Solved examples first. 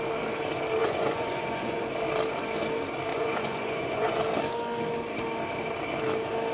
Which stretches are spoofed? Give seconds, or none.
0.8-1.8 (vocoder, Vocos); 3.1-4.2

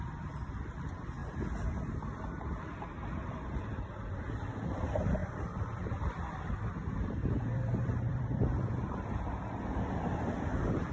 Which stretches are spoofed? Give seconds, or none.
0.0-10.9 (vocoder, BigVGAN v2)

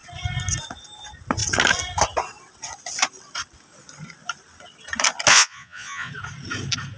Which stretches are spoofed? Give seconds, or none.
5.3-6.1 (vocoder, Vocos)

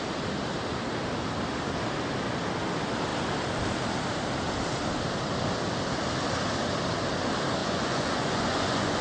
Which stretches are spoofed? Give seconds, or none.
7.6-9.0 (vocoder, Vocos)

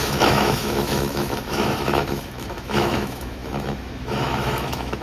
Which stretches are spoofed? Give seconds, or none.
0.0-5.0 (autoencoder, DAC-VAE)

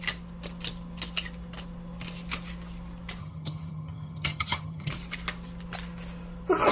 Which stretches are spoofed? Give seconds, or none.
3.2-4.9 (vocoder, HiFi-GAN)

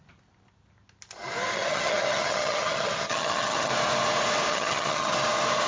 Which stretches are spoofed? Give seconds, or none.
1.5-3.7 (vocoder, HiFi-GAN); 4.5-5.1